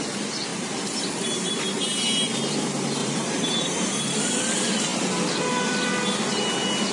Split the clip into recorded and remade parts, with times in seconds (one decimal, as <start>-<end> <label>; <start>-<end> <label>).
0.0-0.5 recorded; 0.5-1.5 remade; 1.5-3.0 recorded; 3.0-4.2 remade; 4.2-6.9 recorded